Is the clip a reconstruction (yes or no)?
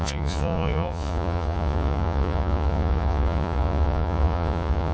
yes